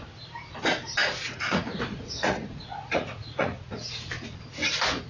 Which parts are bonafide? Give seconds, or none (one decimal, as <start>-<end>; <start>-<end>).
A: 0.0-1.0; 4.1-5.1

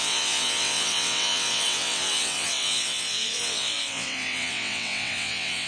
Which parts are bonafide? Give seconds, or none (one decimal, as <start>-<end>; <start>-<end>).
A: none

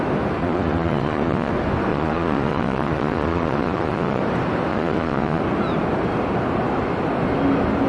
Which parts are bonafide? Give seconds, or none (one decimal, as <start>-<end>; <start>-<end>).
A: 0.0-0.4; 1.5-1.9; 4.2-4.7; 5.4-7.9